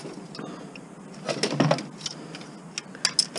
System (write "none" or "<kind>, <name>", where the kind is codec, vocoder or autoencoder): none